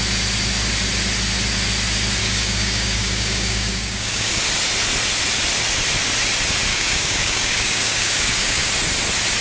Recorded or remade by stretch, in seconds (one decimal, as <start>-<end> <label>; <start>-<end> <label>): 0.0-2.2 recorded; 2.2-4.4 remade; 4.4-6.7 recorded; 6.7-8.7 remade; 8.7-9.4 recorded